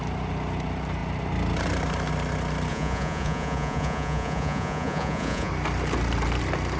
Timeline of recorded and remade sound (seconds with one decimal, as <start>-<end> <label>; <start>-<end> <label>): 0.0-2.7 recorded; 2.7-5.5 remade; 5.5-6.8 recorded

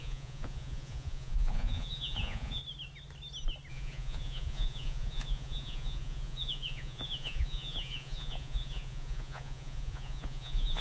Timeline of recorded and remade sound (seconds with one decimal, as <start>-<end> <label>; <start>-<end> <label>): 0.0-2.6 remade; 2.6-3.7 recorded; 3.7-10.8 remade

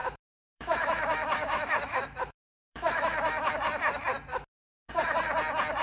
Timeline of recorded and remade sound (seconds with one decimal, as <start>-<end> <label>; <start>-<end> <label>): 0.0-3.5 remade; 3.5-4.3 recorded; 4.3-4.9 remade; 4.9-5.8 recorded

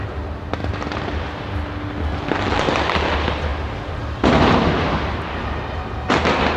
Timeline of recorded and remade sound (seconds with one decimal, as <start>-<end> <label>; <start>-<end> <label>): 0.0-6.6 recorded

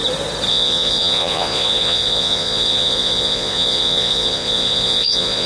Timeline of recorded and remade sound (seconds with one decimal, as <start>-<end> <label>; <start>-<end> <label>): 0.0-0.5 recorded; 0.5-5.5 remade

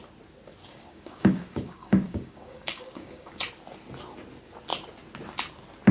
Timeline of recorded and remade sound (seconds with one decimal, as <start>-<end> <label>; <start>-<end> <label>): 0.0-0.6 recorded; 0.6-3.3 remade; 3.3-5.9 recorded

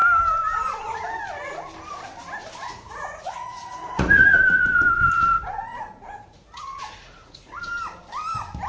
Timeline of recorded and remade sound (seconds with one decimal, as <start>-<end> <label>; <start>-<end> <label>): 0.0-2.7 recorded; 2.7-7.6 remade; 7.6-8.7 recorded

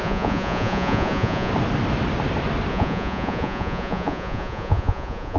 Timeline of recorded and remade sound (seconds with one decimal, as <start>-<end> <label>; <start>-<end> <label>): 0.0-1.5 remade; 1.5-2.7 recorded; 2.7-5.4 remade